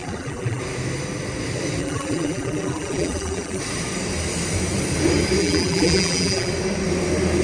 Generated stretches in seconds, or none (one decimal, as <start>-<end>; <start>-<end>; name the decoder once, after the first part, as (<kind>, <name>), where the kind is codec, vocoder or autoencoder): 0.0-0.6 (vocoder, BigVGAN v2); 1.8-3.6; 5.4-6.5